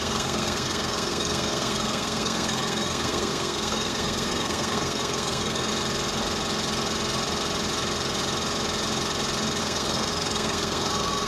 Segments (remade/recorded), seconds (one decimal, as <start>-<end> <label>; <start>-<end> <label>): 0.0-5.7 remade; 5.7-9.6 recorded; 9.6-11.3 remade